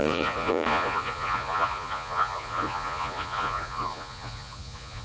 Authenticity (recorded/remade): remade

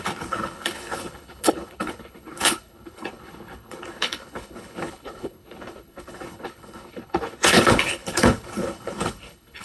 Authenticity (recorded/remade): remade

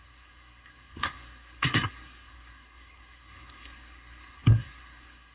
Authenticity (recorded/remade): remade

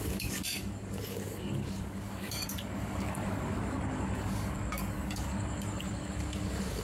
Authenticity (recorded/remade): remade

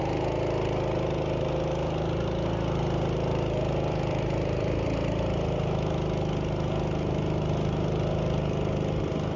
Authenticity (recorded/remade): recorded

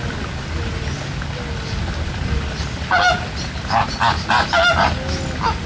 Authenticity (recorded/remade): recorded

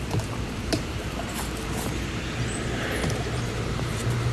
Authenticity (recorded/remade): remade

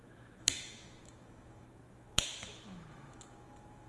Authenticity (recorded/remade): remade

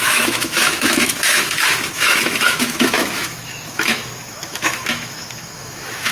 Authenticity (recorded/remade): remade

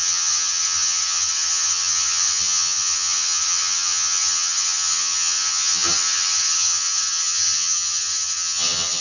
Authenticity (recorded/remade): remade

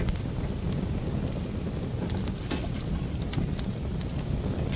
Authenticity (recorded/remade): recorded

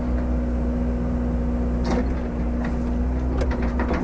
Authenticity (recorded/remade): recorded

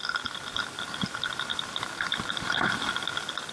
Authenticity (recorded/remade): recorded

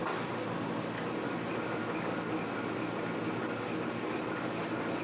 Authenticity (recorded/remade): recorded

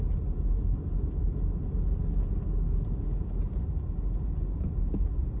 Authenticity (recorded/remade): recorded